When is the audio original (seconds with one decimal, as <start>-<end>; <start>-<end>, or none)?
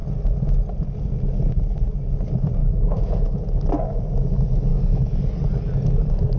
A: 0.0-2.6; 3.4-4.7; 5.2-6.4